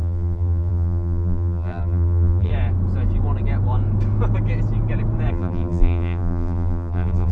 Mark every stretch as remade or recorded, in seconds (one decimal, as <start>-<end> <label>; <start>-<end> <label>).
0.0-2.5 remade; 2.5-5.3 recorded; 5.3-7.3 remade